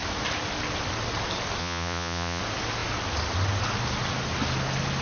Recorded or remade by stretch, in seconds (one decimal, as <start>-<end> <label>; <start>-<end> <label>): 0.0-1.6 recorded; 1.6-2.4 remade; 2.4-5.0 recorded